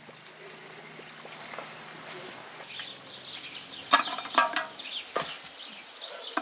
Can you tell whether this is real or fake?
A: real